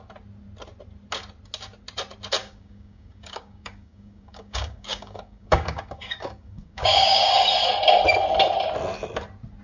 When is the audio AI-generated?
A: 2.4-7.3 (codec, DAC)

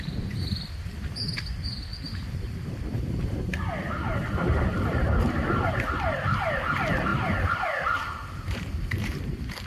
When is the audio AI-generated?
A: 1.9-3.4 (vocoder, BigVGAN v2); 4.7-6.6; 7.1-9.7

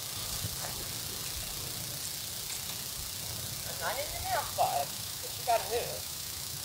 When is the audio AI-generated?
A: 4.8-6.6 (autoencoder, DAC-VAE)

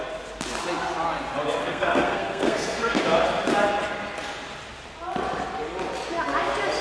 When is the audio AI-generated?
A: 1.6-3.0 (codec, SNAC)

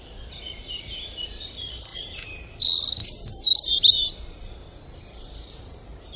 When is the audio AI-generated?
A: 0.0-1.9 (vocoder, BigVGAN v2); 5.6-6.2

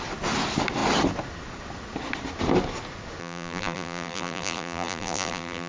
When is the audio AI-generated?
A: 3.2-5.7 (vocoder, BigVGAN v2)